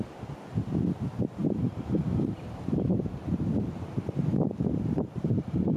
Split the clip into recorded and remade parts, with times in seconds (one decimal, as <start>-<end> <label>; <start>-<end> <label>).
0.0-5.8 remade